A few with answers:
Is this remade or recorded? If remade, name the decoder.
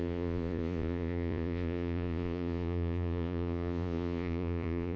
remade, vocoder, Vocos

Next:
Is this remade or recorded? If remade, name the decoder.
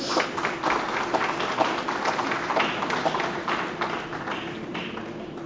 recorded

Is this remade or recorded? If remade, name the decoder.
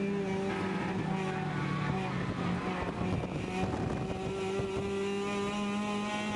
recorded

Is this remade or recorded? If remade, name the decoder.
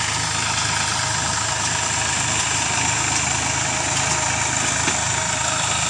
recorded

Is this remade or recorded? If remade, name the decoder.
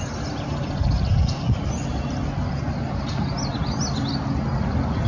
recorded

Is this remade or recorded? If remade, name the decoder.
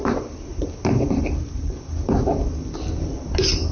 recorded